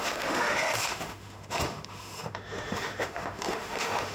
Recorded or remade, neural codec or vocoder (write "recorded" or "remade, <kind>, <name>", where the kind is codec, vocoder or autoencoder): remade, autoencoder, DAC-VAE